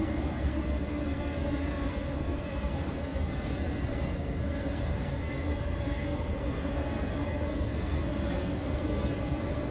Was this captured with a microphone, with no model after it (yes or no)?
no